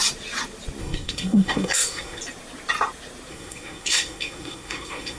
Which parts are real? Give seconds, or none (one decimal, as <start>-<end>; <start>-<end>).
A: 0.0-0.8; 2.2-3.3